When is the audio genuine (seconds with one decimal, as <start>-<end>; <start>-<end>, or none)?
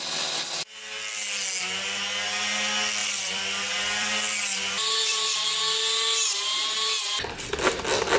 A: 0.0-3.0; 5.6-8.2